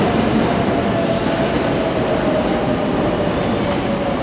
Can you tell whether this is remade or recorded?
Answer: remade